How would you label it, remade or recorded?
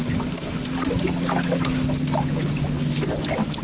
recorded